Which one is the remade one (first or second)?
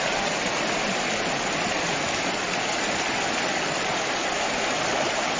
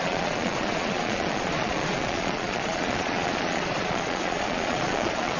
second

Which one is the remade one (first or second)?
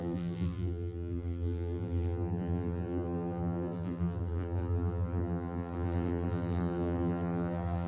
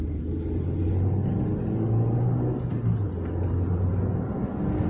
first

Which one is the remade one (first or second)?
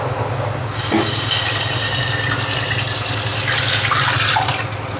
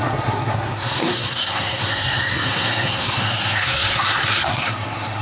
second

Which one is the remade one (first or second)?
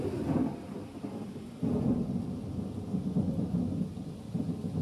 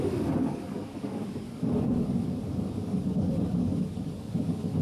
second